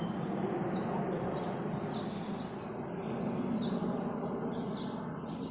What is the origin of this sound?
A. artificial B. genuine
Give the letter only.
B